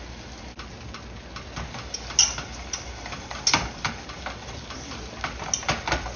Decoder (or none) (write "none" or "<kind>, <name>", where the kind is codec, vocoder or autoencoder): none